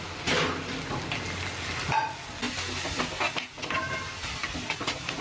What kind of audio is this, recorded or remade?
recorded